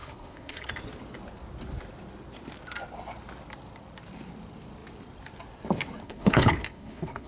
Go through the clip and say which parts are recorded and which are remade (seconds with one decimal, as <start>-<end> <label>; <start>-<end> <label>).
0.0-0.7 remade; 0.7-6.0 recorded; 6.0-7.3 remade